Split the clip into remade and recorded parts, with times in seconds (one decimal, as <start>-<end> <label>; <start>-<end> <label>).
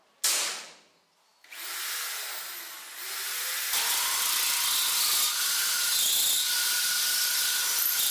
0.0-8.1 recorded